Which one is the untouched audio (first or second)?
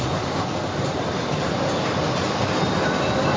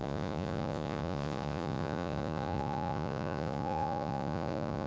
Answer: first